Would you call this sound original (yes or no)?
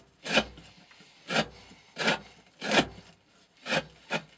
yes